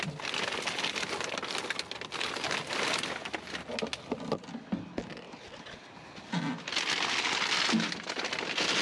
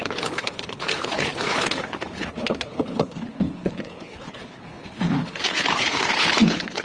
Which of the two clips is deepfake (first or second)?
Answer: second